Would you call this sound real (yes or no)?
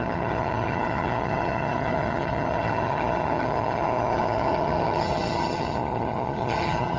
no